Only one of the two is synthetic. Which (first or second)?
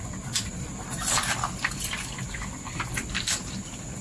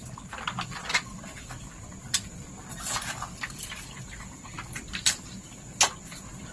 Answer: second